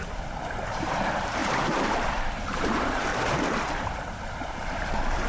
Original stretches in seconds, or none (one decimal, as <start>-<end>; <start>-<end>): 3.1-4.5